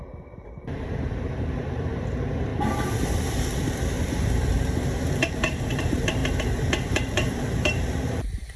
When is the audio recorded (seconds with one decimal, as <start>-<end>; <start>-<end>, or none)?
2.5-5.3; 6.2-6.9